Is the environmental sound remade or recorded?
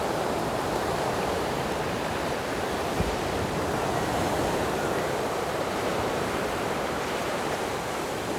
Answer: remade